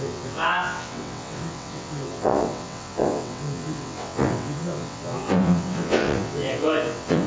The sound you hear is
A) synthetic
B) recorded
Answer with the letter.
A